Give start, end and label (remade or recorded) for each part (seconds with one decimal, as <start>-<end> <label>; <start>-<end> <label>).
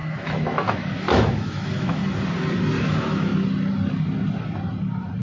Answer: 0.0-2.0 remade; 2.0-2.8 recorded; 2.8-3.3 remade; 3.3-5.2 recorded